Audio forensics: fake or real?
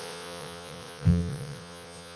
fake